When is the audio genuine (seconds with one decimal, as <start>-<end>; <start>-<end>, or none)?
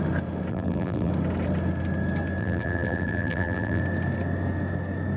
0.0-0.5; 1.1-2.4; 3.8-5.2